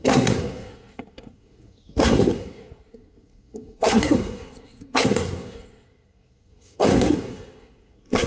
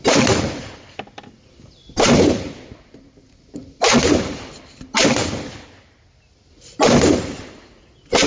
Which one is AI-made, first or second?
first